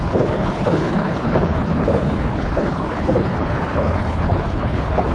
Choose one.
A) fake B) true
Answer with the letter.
A